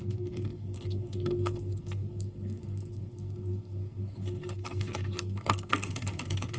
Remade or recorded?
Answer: remade